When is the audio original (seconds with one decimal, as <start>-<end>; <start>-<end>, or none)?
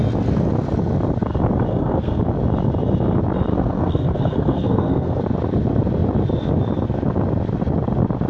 0.0-1.7; 2.2-3.5; 5.2-8.3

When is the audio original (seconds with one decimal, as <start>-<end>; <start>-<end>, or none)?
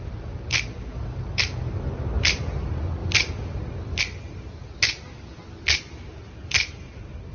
0.0-7.3